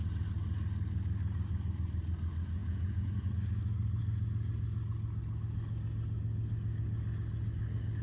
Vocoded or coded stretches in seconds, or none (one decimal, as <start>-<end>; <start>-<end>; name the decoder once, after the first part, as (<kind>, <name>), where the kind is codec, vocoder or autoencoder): 2.6-3.3 (vocoder, Vocos)